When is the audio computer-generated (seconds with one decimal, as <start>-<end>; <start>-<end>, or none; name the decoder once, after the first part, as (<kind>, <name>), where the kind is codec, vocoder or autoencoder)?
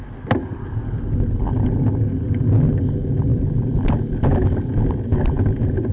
none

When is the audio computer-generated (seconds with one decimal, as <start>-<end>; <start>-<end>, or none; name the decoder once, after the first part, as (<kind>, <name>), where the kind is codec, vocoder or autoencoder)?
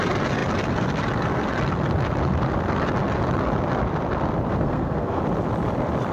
4.5-5.2 (codec, SNAC)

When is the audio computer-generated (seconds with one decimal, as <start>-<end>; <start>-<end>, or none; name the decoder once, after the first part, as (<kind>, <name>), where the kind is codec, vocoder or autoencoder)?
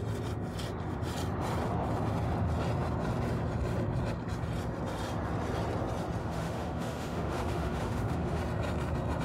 6.2-8.4 (autoencoder, DAC-VAE)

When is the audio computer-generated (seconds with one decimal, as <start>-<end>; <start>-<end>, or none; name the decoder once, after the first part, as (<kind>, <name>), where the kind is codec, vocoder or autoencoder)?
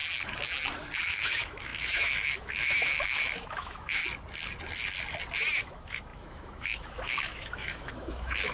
1.0-4.0 (autoencoder, DAC-VAE); 5.6-8.5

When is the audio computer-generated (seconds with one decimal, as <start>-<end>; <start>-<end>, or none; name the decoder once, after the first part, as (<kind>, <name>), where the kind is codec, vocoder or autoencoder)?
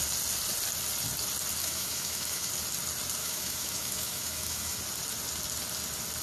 1.6-2.5 (autoencoder, DAC-VAE); 3.2-4.8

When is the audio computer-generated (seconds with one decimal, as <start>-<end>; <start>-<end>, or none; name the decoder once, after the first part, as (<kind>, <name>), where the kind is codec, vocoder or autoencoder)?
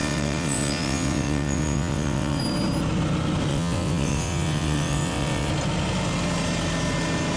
0.0-2.4 (vocoder, WaveNeXt); 3.5-5.5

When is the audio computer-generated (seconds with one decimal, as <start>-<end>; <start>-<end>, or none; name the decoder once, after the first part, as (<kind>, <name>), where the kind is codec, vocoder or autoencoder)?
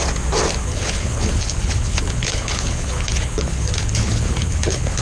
0.6-5.0 (codec, HILCodec)